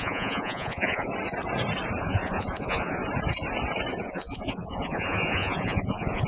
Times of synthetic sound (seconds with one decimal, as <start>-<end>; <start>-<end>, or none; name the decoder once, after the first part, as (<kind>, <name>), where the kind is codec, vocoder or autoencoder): 0.0-1.1 (vocoder, Vocos); 2.0-3.0; 3.9-6.3